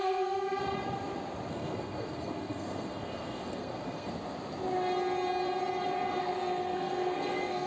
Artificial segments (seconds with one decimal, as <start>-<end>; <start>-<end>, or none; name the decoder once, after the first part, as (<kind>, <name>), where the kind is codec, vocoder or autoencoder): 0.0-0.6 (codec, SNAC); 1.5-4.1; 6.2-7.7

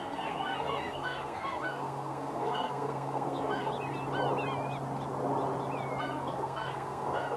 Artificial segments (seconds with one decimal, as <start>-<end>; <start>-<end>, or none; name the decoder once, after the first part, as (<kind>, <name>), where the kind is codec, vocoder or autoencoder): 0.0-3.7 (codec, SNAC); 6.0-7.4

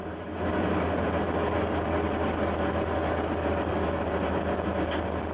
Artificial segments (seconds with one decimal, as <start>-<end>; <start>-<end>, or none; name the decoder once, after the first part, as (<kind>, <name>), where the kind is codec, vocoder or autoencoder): none